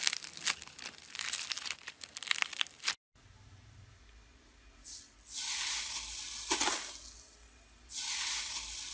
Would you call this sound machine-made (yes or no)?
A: no